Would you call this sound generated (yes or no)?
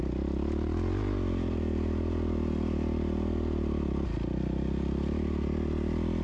no